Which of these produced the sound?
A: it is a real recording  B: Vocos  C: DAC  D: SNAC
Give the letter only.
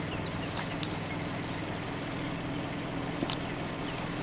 A